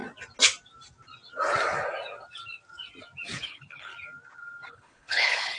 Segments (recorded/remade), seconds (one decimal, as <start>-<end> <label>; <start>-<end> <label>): 0.0-3.4 recorded; 3.4-3.9 remade; 3.9-4.7 recorded; 4.7-5.6 remade